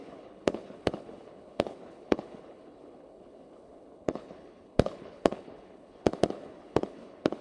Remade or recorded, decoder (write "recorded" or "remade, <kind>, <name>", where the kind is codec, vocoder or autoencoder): remade, codec, HILCodec